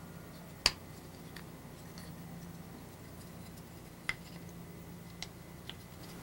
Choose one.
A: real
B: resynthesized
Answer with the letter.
A